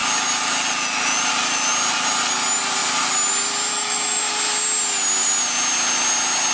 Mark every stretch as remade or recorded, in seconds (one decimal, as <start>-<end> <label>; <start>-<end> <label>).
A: 0.0-3.7 recorded; 3.7-4.2 remade; 4.2-6.5 recorded